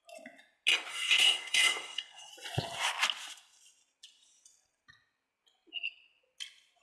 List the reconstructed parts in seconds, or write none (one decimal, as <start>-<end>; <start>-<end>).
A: 0.9-2.3